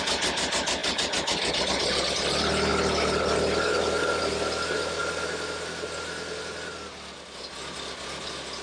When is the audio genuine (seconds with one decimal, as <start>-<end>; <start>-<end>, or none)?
0.0-8.6